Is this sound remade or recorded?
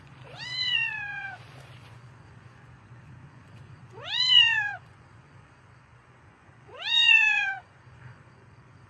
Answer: remade